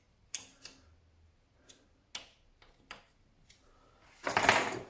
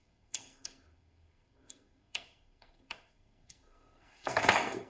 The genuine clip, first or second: first